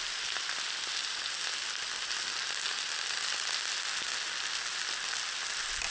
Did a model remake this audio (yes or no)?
no